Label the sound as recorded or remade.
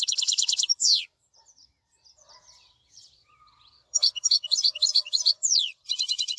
remade